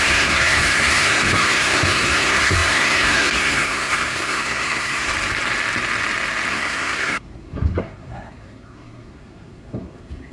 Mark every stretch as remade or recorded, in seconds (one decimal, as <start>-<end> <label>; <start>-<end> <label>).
0.0-5.1 remade; 5.1-6.5 recorded; 6.5-10.3 remade